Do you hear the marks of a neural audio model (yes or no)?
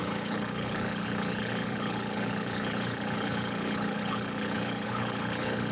yes